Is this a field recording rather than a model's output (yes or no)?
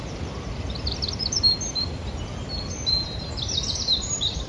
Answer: no